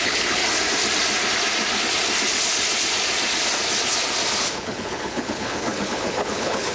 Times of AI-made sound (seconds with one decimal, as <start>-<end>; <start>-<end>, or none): 0.0-0.4; 4.4-6.7